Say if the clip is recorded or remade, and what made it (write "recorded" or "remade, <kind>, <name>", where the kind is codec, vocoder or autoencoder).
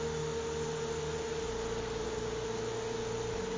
recorded